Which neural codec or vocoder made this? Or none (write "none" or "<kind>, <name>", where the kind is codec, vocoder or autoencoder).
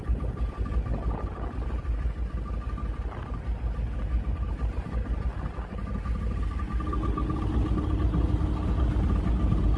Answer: none